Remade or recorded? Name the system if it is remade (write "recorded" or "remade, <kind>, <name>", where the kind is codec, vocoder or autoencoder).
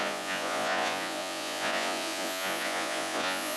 remade, vocoder, Vocos